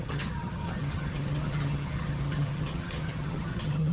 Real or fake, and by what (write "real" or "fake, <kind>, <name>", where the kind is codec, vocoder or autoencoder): fake, vocoder, HiFi-GAN